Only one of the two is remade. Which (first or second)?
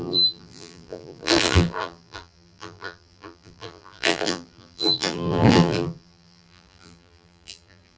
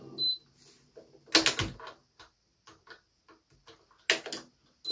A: first